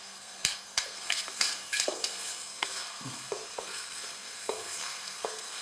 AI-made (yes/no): yes